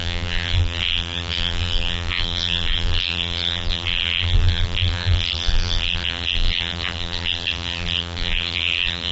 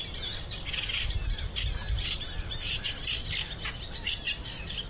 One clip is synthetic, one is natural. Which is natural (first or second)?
second